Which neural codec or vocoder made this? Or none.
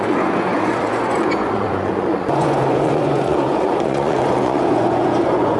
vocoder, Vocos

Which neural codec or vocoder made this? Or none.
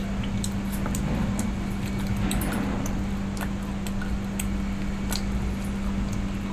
none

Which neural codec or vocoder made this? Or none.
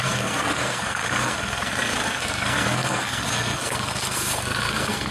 codec, SNAC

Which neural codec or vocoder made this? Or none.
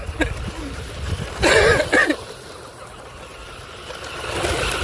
none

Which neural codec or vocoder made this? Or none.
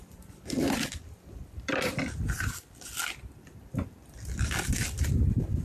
vocoder, BigVGAN v2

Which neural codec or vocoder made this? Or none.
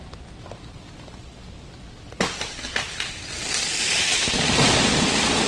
none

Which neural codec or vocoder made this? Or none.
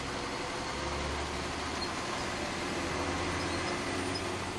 none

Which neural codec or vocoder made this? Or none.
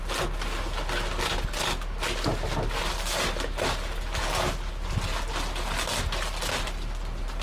none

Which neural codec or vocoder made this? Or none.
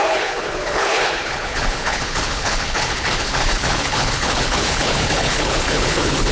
codec, HILCodec